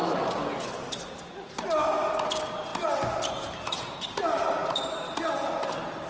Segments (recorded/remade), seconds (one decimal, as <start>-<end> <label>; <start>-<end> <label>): 0.0-6.1 recorded